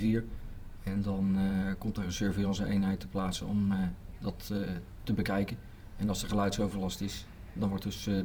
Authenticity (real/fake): fake